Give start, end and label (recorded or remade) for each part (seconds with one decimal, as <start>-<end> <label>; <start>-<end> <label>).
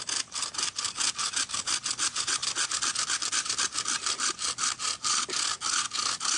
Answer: 0.0-6.4 recorded